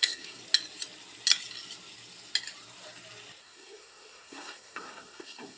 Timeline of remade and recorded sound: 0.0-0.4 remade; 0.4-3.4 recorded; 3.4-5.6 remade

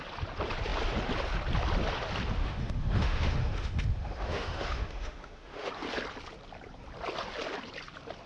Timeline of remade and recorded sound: 0.0-2.4 recorded; 2.4-5.7 remade; 5.7-8.3 recorded

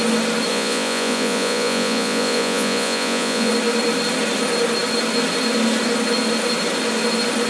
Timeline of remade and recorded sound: 0.0-0.5 recorded; 0.5-3.5 remade; 3.5-7.5 recorded

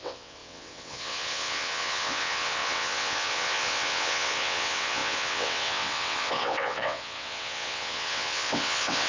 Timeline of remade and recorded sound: 0.0-9.1 remade

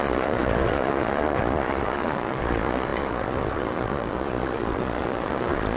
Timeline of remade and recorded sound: 0.0-5.8 remade

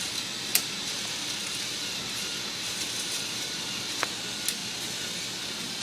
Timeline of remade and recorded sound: 0.0-1.4 recorded; 1.4-3.7 remade; 3.7-4.6 recorded; 4.6-5.2 remade; 5.2-5.8 recorded